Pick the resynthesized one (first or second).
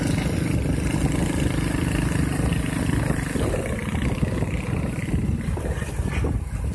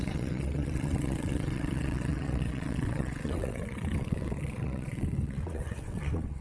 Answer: second